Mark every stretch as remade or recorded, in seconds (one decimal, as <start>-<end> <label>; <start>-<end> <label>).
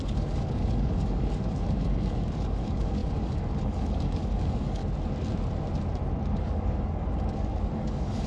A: 0.0-4.8 remade; 4.8-6.3 recorded; 6.3-8.3 remade